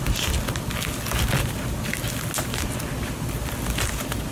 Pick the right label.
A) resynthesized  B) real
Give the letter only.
B